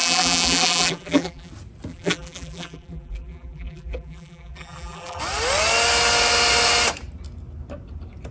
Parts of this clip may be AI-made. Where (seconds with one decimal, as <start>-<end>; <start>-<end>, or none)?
0.0-1.5; 1.9-5.2